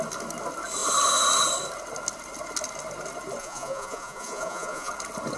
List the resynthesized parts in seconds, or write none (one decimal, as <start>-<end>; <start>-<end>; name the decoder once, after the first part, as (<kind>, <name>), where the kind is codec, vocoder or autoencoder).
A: 3.4-4.9 (vocoder, Vocos)